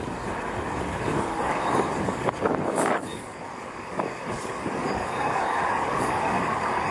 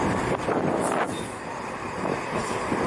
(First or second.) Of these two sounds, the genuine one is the second